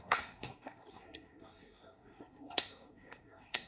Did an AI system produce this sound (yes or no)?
yes